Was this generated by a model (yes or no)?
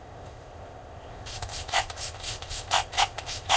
yes